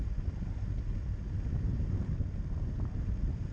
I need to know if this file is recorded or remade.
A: recorded